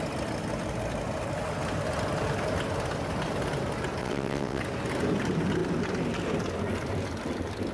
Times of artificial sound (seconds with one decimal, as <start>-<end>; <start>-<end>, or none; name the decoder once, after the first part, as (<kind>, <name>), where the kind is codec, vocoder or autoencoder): 4.0-4.6 (vocoder, WaveNeXt)